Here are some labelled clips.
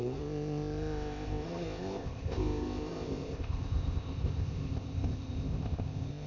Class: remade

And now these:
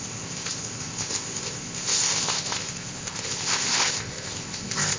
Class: remade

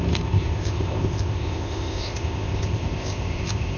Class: remade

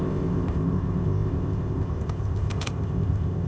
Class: remade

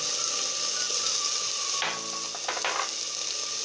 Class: recorded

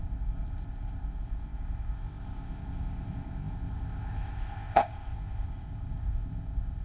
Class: remade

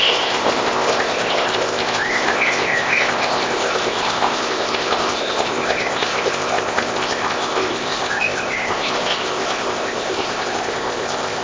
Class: remade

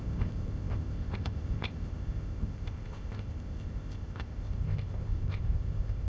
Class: remade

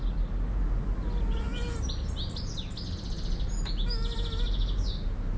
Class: recorded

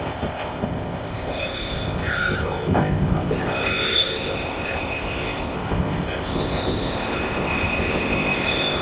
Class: remade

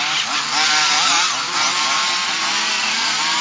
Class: recorded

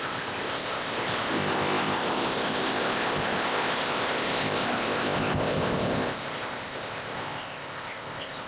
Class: remade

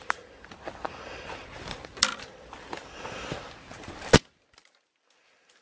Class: recorded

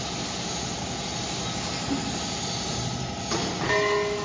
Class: recorded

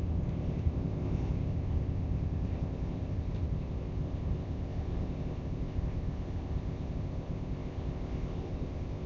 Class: remade